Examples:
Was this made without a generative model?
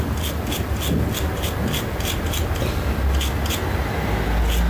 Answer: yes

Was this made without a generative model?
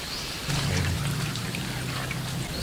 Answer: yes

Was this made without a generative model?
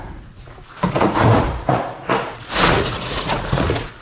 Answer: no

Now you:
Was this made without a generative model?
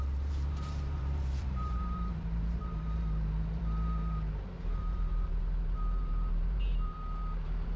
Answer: no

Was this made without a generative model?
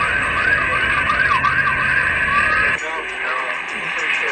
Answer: yes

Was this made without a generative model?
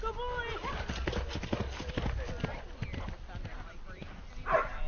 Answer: yes